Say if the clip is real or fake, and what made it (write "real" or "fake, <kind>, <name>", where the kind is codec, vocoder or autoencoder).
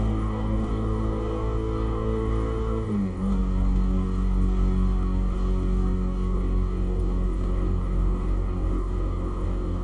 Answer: fake, codec, DAC